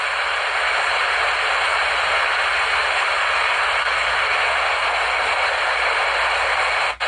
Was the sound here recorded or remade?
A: recorded